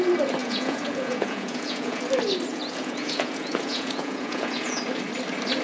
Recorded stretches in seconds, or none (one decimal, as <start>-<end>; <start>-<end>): 0.0-0.4; 2.0-2.5; 4.8-5.6